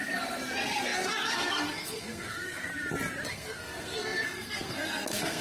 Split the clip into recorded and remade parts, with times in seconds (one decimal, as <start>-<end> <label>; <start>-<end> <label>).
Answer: 0.0-2.7 remade; 2.7-3.3 recorded; 3.3-5.4 remade